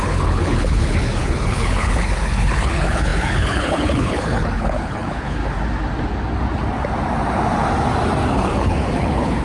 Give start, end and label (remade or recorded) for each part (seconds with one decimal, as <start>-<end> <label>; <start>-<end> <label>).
0.0-5.4 remade; 5.4-8.3 recorded; 8.3-9.4 remade